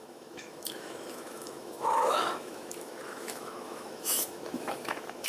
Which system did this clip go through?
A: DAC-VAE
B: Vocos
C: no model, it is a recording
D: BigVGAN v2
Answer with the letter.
A